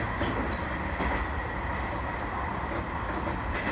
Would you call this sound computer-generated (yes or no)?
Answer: no